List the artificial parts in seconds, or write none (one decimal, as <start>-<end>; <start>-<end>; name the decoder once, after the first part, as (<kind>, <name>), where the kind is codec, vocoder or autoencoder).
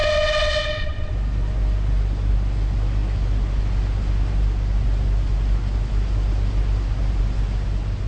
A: 0.0-1.1 (vocoder, WaveNeXt)